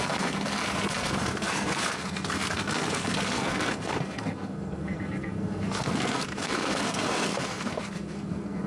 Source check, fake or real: fake